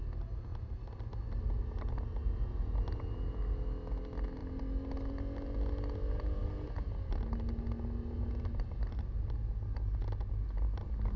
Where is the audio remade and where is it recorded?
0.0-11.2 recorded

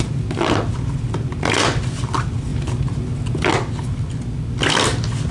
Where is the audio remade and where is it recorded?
0.0-5.3 recorded

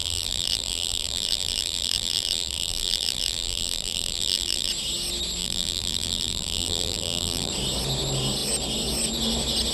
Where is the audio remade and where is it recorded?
0.0-4.7 remade; 4.7-5.4 recorded; 5.4-7.5 remade; 7.5-9.7 recorded

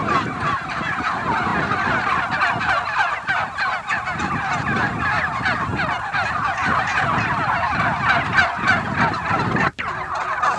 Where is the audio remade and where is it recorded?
0.0-1.5 remade; 1.5-2.6 recorded; 2.6-3.9 remade; 3.9-6.8 recorded; 6.8-10.6 remade

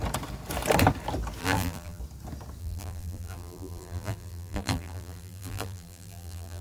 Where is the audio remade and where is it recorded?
0.0-1.4 recorded; 1.4-2.0 remade; 2.0-2.6 recorded; 2.6-6.6 remade